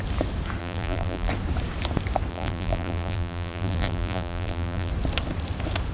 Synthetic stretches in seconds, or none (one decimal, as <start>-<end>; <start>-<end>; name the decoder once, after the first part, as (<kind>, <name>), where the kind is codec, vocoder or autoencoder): 0.6-1.3 (vocoder, BigVGAN v2); 2.3-4.9